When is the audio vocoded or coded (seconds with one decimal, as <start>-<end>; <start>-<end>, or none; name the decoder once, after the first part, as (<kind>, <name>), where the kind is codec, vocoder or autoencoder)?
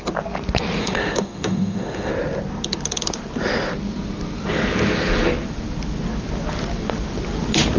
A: 0.8-2.1 (autoencoder, DAC-VAE)